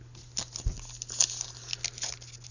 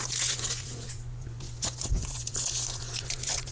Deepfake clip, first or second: second